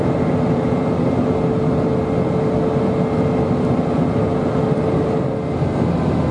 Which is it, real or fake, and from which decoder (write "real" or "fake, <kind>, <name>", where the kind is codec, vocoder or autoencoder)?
real